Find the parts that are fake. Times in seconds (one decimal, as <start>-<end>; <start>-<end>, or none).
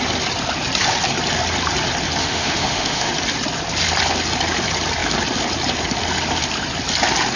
2.2-3.1